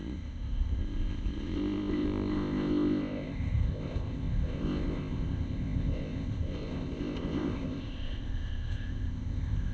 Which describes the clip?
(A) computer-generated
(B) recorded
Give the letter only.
A